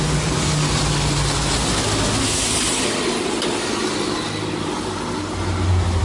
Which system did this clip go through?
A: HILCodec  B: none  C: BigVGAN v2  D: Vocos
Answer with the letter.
B